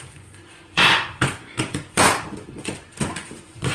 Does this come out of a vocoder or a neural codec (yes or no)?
yes